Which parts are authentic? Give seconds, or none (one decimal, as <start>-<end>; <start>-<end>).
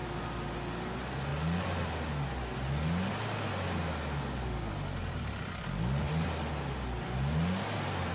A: 0.0-8.1